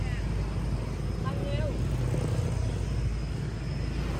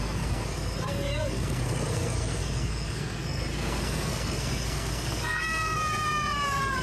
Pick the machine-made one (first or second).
second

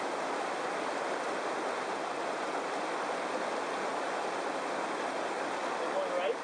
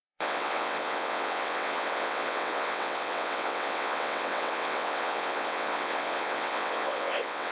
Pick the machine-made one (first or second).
second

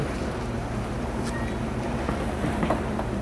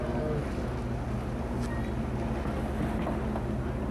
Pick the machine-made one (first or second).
first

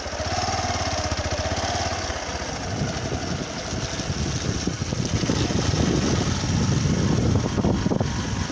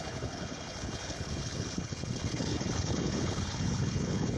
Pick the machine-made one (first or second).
second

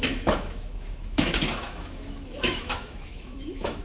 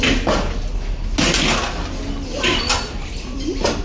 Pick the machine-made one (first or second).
first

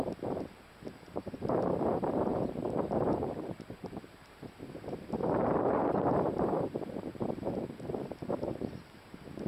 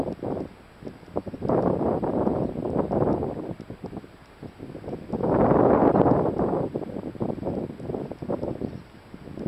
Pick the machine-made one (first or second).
first